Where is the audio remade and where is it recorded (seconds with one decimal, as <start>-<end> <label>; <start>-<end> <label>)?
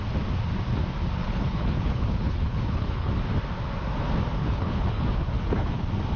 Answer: 0.0-1.2 recorded; 1.2-3.1 remade; 3.1-4.4 recorded; 4.4-5.7 remade; 5.7-6.2 recorded